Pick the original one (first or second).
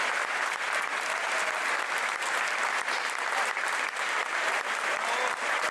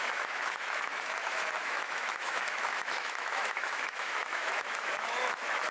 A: first